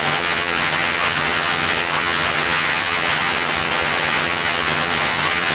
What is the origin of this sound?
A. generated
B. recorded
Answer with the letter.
A